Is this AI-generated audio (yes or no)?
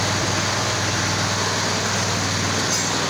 no